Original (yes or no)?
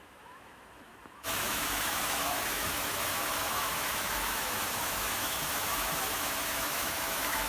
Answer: no